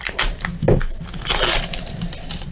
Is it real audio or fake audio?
fake